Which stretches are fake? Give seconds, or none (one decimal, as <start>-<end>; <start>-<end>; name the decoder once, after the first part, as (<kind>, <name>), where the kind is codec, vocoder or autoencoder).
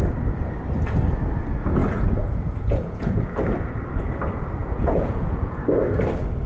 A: 1.8-3.2 (vocoder, Vocos); 4.6-5.6